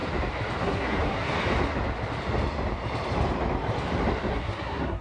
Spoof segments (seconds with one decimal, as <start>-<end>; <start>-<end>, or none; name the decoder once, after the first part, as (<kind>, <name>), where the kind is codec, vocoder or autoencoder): 0.6-1.3 (codec, SNAC); 4.3-5.0